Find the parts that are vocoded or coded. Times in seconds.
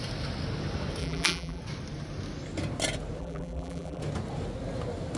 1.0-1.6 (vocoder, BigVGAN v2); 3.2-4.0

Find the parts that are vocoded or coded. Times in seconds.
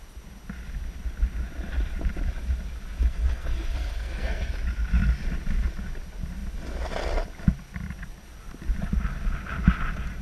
3.1-4.5 (codec, SNAC)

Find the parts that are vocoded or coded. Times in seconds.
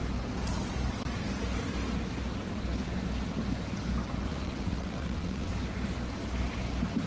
4.3-5.5 (vocoder, WaveNeXt)